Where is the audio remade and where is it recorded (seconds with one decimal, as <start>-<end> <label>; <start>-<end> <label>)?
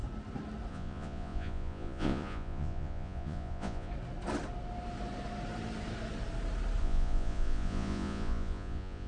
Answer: 0.0-0.7 recorded; 0.7-3.9 remade; 3.9-6.8 recorded; 6.8-9.1 remade